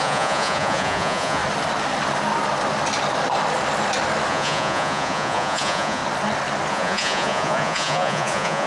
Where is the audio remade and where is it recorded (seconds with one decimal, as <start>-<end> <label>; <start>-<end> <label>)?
0.0-1.4 remade; 1.4-4.3 recorded; 4.3-6.0 remade; 6.0-6.7 recorded; 6.7-8.7 remade